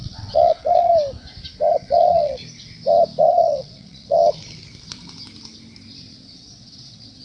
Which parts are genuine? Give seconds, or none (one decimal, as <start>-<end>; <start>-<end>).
0.9-1.7; 2.4-3.2; 4.2-6.0